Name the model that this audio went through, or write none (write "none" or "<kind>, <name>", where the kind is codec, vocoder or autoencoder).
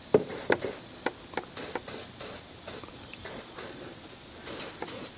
none